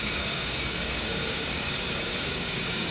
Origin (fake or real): fake